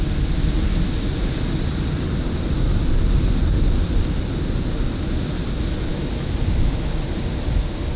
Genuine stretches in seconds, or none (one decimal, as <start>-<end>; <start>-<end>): 0.0-5.9; 6.9-8.0